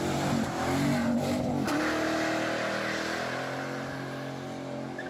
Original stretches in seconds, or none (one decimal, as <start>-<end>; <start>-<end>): 0.0-1.0; 1.8-5.1